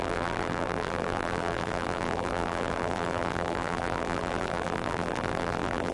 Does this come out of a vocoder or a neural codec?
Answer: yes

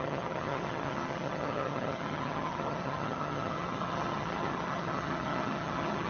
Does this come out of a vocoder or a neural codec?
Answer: yes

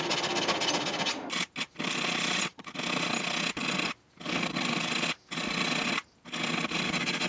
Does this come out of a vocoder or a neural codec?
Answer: no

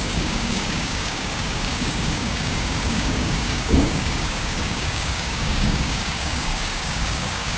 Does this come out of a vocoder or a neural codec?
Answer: yes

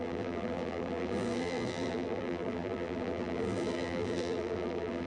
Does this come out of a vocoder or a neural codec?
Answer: yes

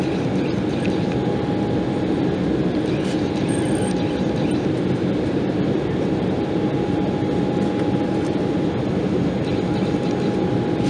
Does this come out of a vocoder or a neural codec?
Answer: no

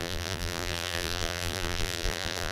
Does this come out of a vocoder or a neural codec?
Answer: yes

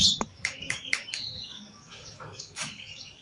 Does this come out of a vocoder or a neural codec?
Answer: yes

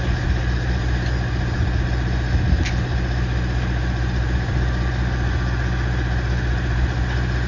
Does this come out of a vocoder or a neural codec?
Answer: no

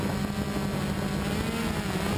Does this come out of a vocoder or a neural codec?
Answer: no